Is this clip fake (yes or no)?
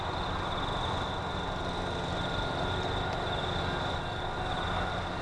no